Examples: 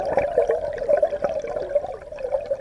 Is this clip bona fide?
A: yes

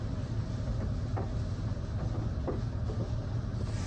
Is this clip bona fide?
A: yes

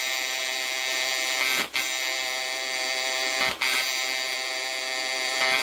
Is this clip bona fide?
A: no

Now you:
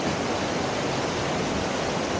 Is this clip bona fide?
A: yes